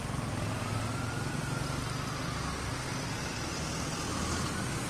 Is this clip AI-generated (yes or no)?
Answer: no